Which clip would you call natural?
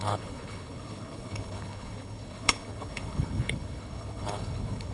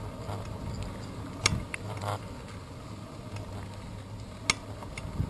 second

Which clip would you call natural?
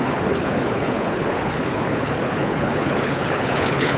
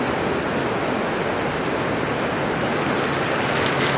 second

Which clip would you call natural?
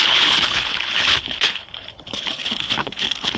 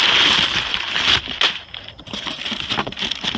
second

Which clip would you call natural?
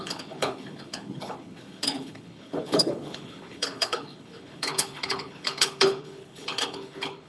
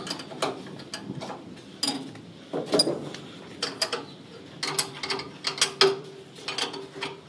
second